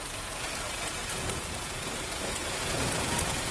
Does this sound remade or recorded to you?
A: remade